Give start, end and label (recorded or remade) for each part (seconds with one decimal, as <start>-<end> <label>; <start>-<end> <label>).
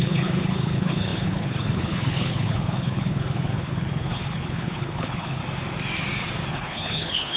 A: 0.0-5.4 remade; 5.4-6.5 recorded; 6.5-7.4 remade